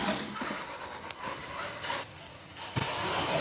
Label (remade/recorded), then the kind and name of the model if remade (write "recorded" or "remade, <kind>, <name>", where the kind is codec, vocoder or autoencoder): remade, vocoder, BigVGAN v2